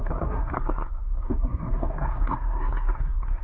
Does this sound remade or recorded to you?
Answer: remade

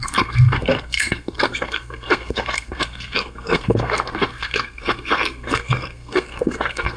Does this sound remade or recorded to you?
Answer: remade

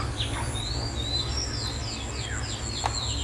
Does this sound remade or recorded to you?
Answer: recorded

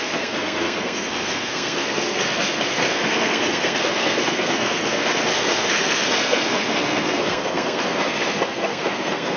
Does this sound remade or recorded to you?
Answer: remade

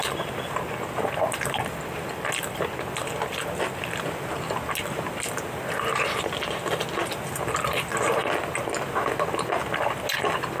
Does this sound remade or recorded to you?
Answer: recorded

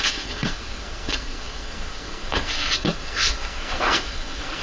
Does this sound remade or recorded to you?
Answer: remade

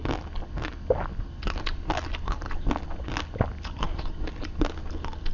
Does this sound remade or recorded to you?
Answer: recorded